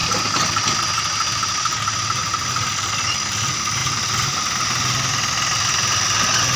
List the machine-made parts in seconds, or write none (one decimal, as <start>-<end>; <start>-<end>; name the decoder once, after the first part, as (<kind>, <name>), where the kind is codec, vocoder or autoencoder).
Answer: 0.0-0.8 (vocoder, BigVGAN v2); 2.2-2.9